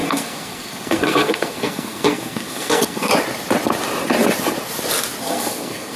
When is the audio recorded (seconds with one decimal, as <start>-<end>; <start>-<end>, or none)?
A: 3.1-5.2